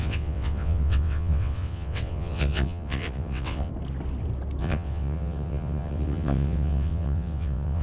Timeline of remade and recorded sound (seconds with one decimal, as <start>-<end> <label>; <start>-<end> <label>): 0.0-3.7 remade; 3.7-4.6 recorded; 4.6-7.8 remade